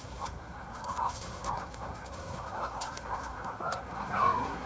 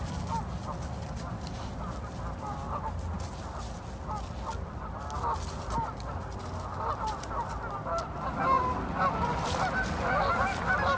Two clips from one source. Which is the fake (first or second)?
first